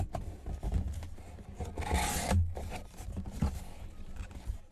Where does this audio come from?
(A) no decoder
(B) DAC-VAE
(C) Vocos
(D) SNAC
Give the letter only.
A